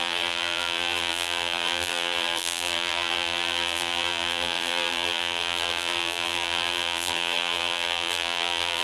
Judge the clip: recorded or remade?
remade